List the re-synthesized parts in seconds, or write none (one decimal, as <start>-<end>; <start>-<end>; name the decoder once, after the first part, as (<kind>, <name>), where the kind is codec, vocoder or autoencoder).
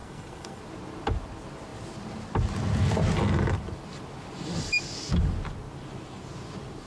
0.0-0.6 (codec, SNAC)